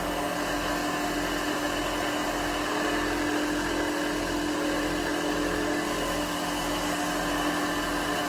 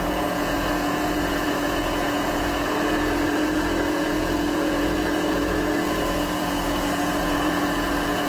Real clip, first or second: first